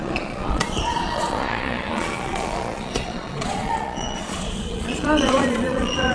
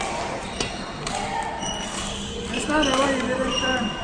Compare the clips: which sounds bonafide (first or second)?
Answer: second